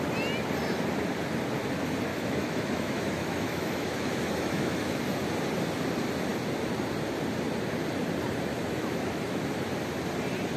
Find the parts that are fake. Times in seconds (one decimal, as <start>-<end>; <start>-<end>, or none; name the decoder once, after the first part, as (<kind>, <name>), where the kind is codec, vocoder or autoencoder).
2.1-5.0 (autoencoder, DAC-VAE); 8.5-9.4